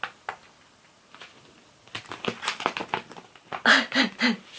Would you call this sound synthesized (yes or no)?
no